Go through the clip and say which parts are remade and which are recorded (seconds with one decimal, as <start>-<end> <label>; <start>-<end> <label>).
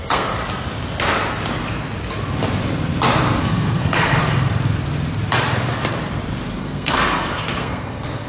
0.0-0.4 remade; 0.4-3.4 recorded; 3.4-4.2 remade; 4.2-6.6 recorded; 6.6-8.3 remade